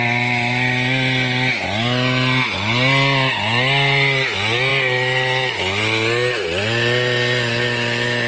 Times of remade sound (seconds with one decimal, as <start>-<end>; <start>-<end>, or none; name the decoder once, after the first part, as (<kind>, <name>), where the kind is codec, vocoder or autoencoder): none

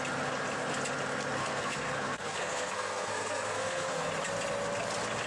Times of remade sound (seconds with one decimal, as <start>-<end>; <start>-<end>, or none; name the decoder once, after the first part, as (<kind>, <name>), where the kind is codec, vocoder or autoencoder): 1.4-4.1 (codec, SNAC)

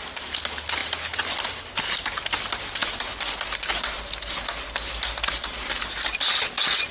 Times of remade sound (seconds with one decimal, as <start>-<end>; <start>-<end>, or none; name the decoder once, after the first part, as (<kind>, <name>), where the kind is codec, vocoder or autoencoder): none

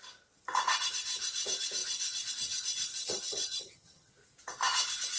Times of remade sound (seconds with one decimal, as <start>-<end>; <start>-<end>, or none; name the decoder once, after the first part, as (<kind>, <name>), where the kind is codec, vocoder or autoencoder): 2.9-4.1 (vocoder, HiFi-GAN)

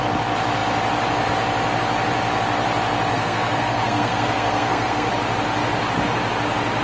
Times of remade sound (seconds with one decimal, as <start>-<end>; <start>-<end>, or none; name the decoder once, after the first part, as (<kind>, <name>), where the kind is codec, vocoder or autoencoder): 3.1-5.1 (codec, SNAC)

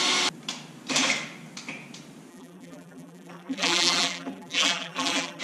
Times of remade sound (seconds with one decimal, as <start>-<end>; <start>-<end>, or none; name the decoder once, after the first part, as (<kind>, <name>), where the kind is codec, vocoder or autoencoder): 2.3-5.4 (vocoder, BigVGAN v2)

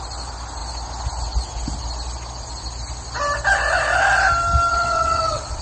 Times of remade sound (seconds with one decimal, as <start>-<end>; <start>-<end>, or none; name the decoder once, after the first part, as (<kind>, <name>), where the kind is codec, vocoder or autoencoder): 4.7-5.6 (vocoder, WaveNeXt)